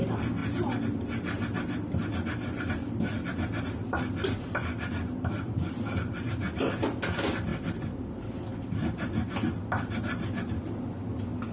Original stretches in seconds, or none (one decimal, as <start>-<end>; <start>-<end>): 0.0-0.4; 1.0-7.5; 8.1-11.5